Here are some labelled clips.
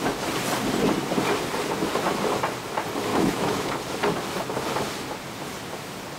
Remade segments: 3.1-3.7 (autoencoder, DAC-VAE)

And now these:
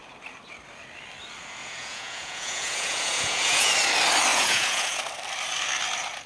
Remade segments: 1.6-3.7 (vocoder, Vocos); 4.3-5.0